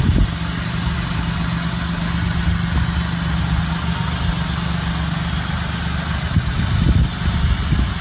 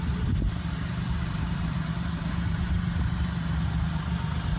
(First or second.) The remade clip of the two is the second